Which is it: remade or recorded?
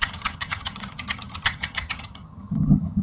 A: remade